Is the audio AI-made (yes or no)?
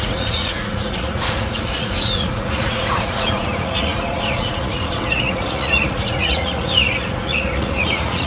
yes